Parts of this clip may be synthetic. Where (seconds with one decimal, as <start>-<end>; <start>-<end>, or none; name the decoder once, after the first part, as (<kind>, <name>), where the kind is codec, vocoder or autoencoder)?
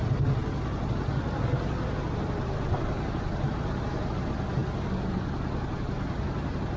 none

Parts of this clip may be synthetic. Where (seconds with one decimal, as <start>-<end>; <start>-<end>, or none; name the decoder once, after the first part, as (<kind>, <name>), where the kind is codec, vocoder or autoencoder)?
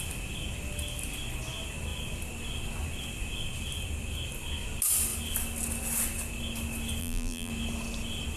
7.0-7.5 (vocoder, BigVGAN v2)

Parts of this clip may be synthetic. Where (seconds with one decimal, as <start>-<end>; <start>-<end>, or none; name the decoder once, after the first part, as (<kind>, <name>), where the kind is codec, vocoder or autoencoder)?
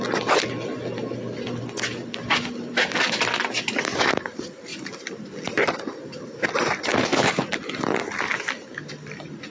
none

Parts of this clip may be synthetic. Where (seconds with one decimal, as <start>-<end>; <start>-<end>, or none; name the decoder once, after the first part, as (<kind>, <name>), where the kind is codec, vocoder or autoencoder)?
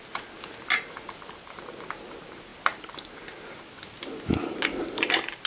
none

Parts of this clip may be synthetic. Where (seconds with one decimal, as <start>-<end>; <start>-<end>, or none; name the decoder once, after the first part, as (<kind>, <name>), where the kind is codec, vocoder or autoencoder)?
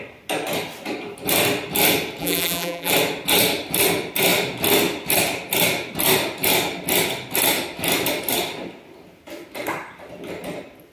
2.2-2.9 (vocoder, BigVGAN v2)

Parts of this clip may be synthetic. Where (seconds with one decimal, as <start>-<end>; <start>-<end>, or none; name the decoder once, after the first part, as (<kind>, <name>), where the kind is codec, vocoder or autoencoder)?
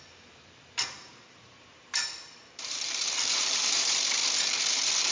0.0-4.2 (vocoder, BigVGAN v2)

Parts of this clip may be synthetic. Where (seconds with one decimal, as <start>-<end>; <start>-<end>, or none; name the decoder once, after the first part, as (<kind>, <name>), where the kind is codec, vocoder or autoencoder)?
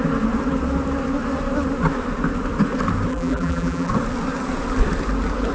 3.1-3.9 (vocoder, BigVGAN v2)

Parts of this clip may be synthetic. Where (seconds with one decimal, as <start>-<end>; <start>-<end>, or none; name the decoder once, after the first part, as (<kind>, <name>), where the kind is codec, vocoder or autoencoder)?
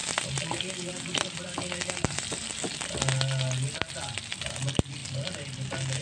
0.0-2.8 (vocoder, BigVGAN v2)